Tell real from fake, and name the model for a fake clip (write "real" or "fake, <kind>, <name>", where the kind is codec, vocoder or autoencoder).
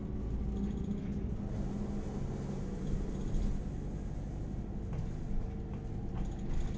real